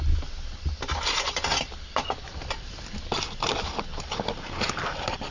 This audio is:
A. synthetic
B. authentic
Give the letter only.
B